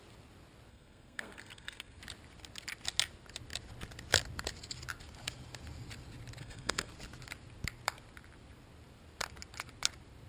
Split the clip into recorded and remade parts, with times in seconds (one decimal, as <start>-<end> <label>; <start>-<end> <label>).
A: 0.0-0.7 recorded; 0.7-2.0 remade; 2.0-6.4 recorded; 6.4-6.9 remade; 6.9-10.3 recorded